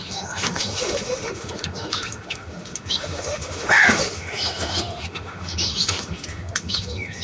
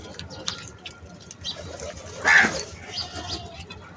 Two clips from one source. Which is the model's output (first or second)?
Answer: first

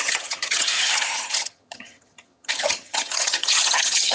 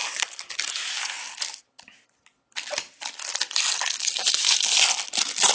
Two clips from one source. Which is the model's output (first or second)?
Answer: first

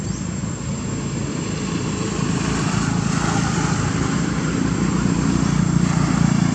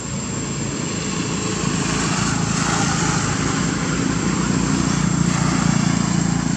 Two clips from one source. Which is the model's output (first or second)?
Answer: first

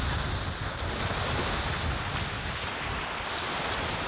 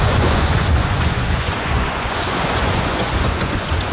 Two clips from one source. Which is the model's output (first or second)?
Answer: second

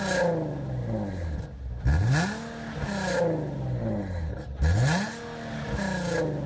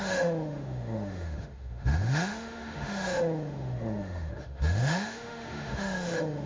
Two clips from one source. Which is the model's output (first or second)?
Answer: second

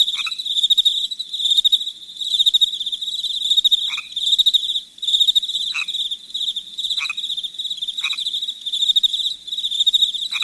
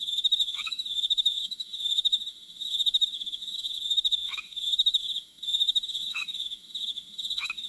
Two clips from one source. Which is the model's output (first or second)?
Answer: second